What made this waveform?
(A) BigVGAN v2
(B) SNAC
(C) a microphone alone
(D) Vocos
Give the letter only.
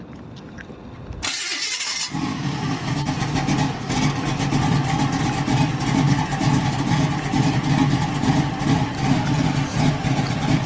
C